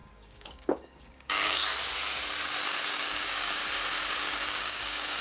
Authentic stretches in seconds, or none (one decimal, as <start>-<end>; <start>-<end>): 1.6-2.9; 3.6-4.2